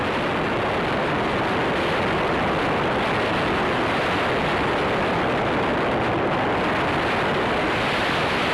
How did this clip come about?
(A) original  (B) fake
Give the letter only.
A